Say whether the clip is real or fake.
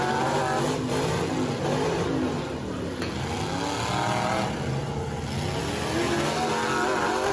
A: real